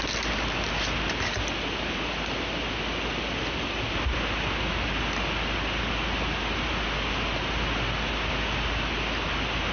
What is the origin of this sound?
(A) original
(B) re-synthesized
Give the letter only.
A